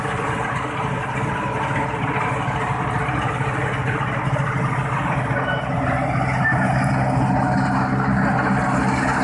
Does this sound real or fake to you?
real